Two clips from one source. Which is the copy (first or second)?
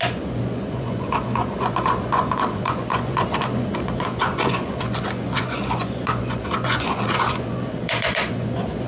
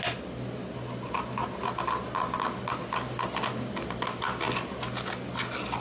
first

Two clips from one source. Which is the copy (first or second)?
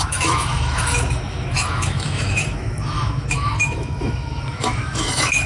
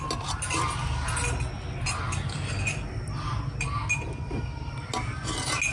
first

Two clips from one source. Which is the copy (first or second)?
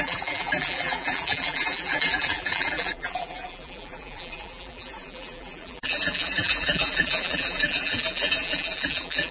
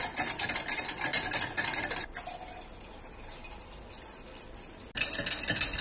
first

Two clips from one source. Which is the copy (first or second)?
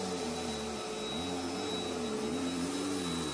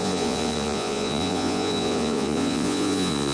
second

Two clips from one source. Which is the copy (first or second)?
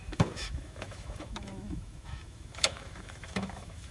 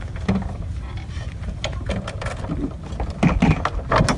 first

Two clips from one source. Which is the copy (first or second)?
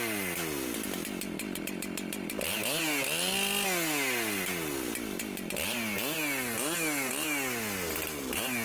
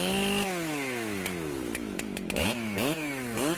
second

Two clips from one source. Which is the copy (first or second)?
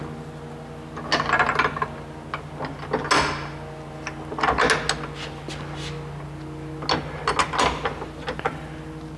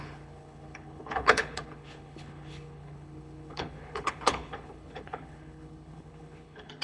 second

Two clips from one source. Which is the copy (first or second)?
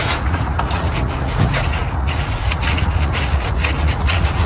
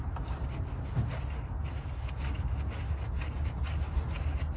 first